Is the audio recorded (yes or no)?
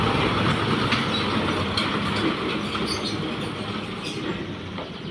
yes